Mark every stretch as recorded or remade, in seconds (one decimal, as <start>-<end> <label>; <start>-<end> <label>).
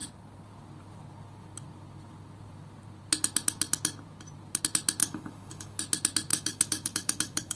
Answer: 0.0-5.0 recorded; 5.0-5.8 remade; 5.8-6.3 recorded; 6.3-7.6 remade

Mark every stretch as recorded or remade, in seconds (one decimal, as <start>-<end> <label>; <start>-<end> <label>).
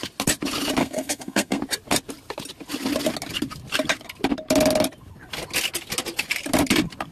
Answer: 0.0-0.8 recorded; 0.8-1.6 remade; 1.6-7.1 recorded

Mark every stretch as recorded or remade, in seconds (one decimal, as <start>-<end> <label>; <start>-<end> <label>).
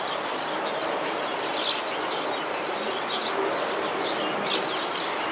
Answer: 0.0-5.3 recorded